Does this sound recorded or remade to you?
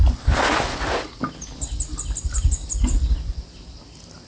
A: recorded